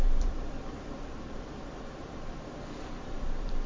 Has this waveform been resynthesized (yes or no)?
yes